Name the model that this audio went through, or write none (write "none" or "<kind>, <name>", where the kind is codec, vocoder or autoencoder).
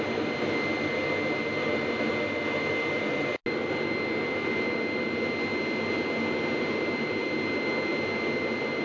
none